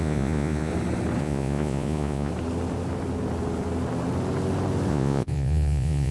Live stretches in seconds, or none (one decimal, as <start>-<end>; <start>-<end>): 0.7-1.2; 2.3-4.9